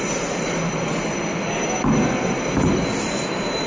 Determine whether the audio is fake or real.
real